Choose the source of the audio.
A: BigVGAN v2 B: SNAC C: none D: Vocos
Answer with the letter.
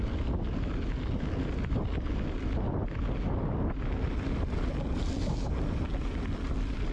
C